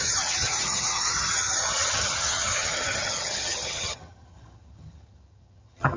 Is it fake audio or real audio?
fake